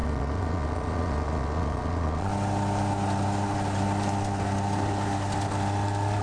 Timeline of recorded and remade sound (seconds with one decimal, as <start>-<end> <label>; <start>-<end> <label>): 0.0-2.3 remade; 2.3-6.2 recorded